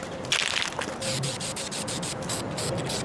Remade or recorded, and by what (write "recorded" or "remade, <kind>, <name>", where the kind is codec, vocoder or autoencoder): recorded